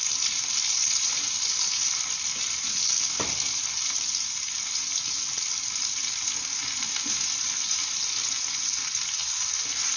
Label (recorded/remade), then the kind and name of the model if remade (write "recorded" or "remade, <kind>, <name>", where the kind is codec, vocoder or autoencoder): recorded